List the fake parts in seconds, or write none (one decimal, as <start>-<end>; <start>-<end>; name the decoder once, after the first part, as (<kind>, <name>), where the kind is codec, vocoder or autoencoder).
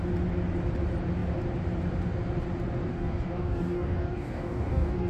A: 2.9-5.1 (codec, DAC)